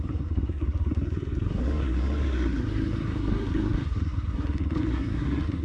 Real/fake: fake